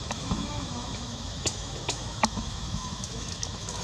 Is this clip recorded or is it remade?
remade